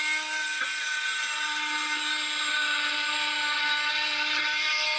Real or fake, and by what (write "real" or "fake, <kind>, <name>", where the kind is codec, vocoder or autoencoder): real